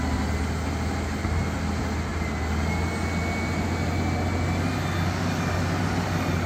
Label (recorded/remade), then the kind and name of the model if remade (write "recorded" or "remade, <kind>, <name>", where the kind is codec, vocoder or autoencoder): recorded